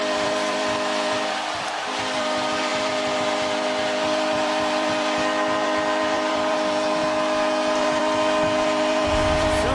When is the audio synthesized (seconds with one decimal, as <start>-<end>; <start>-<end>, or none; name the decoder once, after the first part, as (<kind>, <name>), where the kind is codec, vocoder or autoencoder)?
0.0-7.0 (vocoder, BigVGAN v2); 7.8-9.7